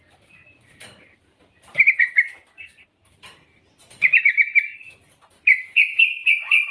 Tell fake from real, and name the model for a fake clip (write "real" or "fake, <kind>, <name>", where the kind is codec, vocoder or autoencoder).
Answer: fake, vocoder, BigVGAN v2